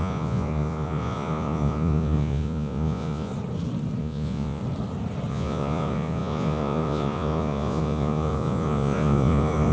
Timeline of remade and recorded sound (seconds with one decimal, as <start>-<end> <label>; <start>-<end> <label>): 0.0-3.3 remade; 3.3-4.0 recorded; 4.0-4.6 remade; 4.6-5.3 recorded; 5.3-9.7 remade